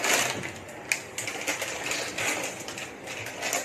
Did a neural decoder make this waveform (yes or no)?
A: no